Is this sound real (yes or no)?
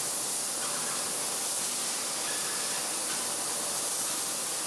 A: yes